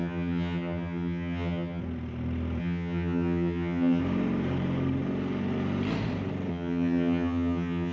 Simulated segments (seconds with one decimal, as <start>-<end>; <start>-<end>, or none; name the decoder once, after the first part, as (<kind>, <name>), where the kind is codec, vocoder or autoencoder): 0.0-1.8 (vocoder, HiFi-GAN); 2.6-4.0; 6.5-7.9